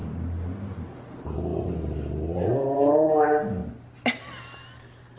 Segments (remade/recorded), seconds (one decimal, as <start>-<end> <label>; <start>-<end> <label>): 0.0-5.2 recorded